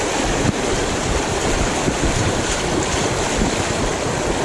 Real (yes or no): yes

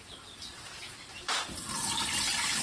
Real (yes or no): yes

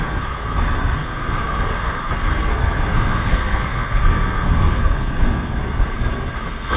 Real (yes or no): no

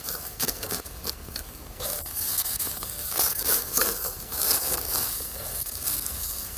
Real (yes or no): no